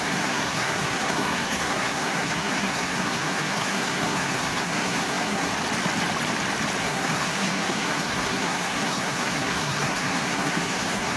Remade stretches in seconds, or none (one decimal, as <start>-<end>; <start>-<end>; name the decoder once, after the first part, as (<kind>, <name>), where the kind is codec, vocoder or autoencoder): 0.0-5.5 (codec, SNAC); 6.8-11.2